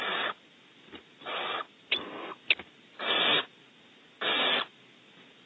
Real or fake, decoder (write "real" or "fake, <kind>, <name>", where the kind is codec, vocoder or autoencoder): real